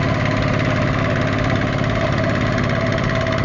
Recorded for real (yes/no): yes